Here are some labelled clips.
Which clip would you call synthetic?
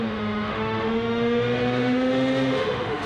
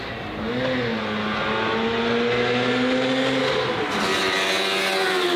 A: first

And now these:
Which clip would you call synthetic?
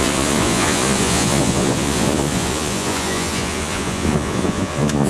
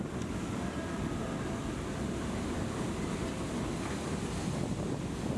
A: first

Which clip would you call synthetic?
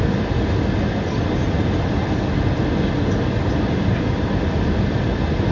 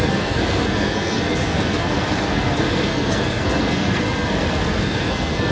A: second